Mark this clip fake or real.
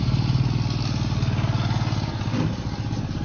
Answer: real